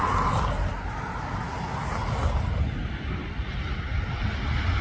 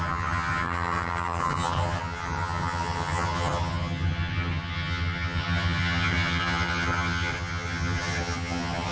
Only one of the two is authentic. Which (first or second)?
first